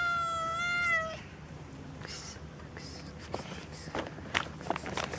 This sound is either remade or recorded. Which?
recorded